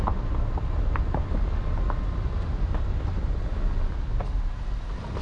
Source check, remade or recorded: recorded